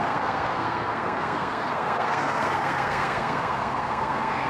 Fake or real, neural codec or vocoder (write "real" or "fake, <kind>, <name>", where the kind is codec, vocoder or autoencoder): fake, codec, SNAC